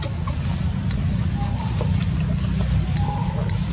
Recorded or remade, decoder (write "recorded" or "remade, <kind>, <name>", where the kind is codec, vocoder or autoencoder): recorded